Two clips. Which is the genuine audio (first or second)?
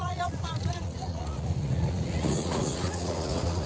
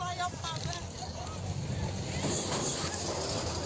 second